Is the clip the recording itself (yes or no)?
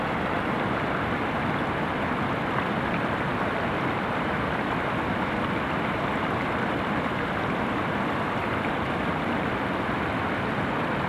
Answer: no